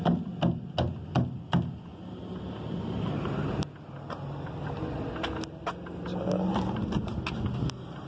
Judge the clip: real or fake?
real